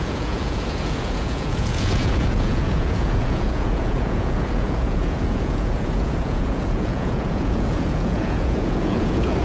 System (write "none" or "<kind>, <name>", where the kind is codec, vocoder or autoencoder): vocoder, Vocos